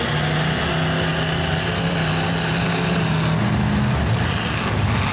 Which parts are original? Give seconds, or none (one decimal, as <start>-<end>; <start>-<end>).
0.0-5.1

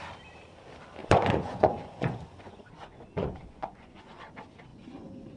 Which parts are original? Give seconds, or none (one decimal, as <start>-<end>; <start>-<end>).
0.0-1.0; 4.2-4.7

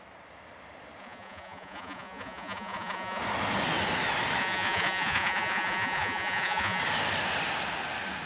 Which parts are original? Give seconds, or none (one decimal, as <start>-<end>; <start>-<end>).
0.0-1.0; 3.2-4.4; 6.8-8.3

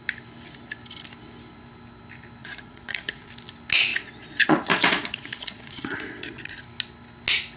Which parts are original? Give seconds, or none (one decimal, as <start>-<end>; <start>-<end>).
0.0-2.4; 3.3-3.9; 6.6-7.6